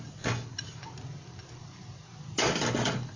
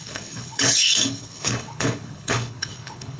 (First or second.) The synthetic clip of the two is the second